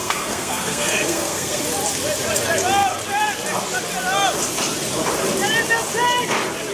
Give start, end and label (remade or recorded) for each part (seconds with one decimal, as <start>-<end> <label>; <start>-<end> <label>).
0.0-1.6 remade; 1.6-6.7 recorded